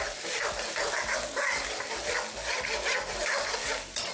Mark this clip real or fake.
real